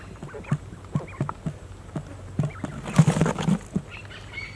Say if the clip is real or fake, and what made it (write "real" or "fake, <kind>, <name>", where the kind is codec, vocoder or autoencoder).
real